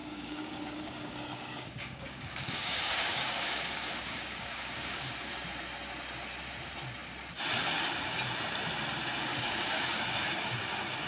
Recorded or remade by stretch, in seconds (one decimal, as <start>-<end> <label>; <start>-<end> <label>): 0.0-5.3 remade; 5.3-9.3 recorded; 9.3-10.0 remade; 10.0-11.1 recorded